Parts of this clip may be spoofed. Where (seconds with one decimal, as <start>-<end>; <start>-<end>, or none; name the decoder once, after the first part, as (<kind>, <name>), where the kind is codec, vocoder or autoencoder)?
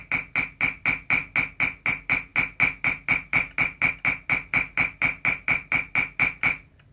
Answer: none